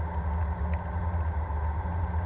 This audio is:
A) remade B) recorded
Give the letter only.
B